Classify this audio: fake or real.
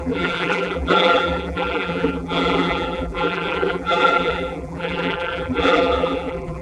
fake